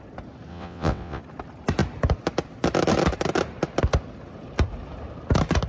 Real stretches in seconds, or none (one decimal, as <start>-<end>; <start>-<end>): 0.0-0.5; 1.2-5.7